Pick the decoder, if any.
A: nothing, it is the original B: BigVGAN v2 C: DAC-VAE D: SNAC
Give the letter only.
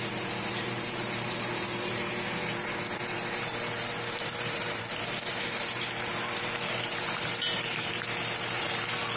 B